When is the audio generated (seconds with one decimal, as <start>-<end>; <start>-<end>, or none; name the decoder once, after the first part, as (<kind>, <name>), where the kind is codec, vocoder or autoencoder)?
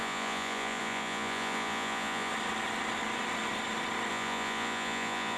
0.0-2.3 (vocoder, Vocos); 4.1-5.4